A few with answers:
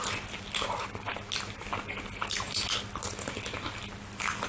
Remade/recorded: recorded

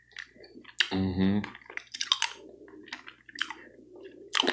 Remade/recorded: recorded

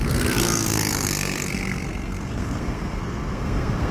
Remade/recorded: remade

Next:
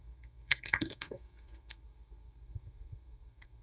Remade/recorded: remade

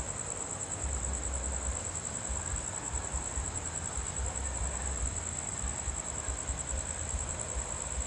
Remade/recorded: recorded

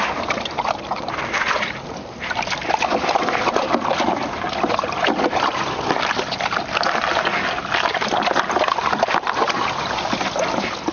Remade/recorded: recorded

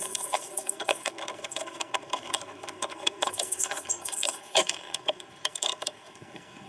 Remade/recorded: remade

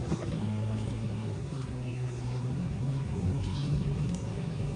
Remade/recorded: remade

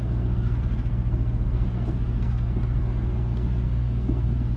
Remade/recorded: remade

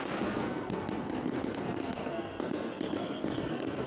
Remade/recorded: remade